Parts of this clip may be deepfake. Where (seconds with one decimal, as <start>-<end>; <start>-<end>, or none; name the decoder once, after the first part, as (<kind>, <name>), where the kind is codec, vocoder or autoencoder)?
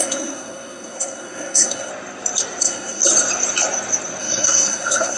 0.0-1.9 (codec, SNAC); 2.6-3.0; 4.2-5.2